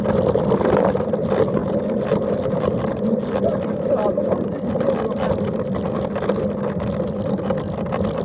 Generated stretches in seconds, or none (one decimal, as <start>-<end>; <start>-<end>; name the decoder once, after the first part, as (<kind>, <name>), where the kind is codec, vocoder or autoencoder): none